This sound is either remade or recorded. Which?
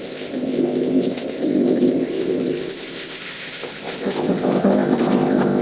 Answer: remade